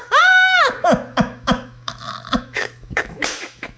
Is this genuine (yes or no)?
no